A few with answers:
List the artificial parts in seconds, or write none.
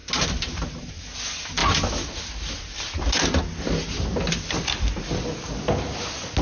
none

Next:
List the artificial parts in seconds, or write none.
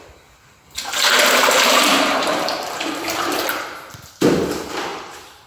1.4-4.3 (vocoder, BigVGAN v2); 4.9-5.5